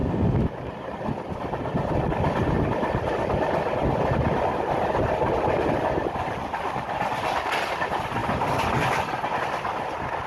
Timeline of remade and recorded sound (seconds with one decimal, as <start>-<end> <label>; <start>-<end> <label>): 0.0-5.1 recorded; 5.1-10.3 remade